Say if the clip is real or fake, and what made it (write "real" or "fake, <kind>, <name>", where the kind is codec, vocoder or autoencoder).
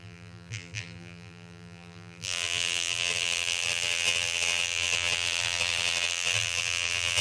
fake, vocoder, BigVGAN v2